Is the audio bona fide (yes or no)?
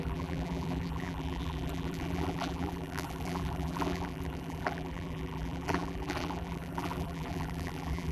no